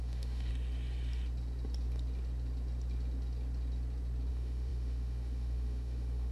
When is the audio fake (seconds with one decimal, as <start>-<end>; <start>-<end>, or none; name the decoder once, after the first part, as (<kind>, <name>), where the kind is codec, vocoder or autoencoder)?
0.0-0.5 (autoencoder, DAC-VAE); 4.3-6.3